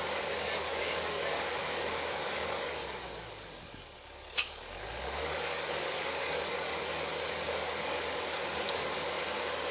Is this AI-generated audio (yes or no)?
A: yes